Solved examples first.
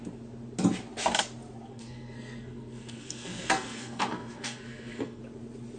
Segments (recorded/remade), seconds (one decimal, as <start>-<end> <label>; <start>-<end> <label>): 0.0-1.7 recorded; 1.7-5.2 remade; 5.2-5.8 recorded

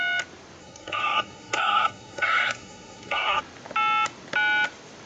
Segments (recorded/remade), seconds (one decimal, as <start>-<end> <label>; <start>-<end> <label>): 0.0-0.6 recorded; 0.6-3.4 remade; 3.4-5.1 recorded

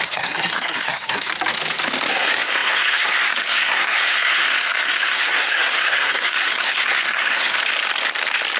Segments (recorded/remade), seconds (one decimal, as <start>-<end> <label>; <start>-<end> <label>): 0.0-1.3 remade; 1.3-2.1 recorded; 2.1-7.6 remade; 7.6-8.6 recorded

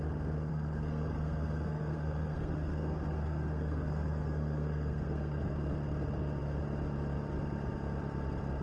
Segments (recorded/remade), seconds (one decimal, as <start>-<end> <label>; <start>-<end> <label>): 0.0-0.5 recorded; 0.5-5.4 remade; 5.4-8.6 recorded

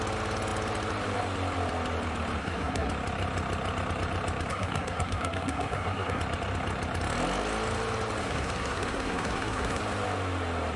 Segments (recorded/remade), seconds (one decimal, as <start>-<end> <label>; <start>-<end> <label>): 0.0-2.4 recorded; 2.4-2.9 remade; 2.9-4.5 recorded; 4.5-6.2 remade; 6.2-8.2 recorded; 8.2-9.8 remade; 9.8-10.8 recorded